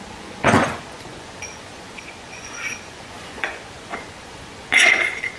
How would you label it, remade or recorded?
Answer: remade